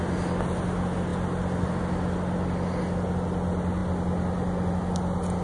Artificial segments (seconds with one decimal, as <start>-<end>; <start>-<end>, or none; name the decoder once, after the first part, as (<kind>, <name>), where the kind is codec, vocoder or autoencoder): none